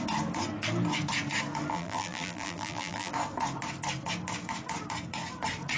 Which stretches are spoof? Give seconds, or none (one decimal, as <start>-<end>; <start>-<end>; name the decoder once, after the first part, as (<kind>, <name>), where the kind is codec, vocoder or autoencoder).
1.7-3.1 (vocoder, BigVGAN v2)